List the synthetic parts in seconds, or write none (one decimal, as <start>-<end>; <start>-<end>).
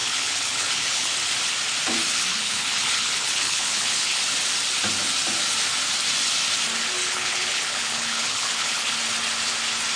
0.0-1.1; 2.3-4.2; 7.0-9.0